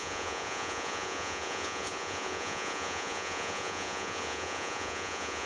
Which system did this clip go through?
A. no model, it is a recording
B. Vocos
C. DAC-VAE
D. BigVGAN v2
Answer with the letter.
B